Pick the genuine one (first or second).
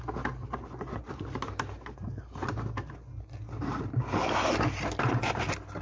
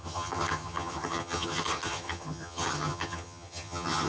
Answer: first